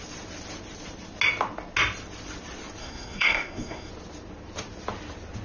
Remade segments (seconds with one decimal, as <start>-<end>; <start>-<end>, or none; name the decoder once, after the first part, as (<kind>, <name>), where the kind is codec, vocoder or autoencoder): 2.8-3.9 (codec, SNAC)